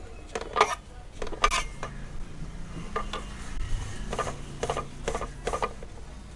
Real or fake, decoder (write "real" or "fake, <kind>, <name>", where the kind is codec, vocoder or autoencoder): real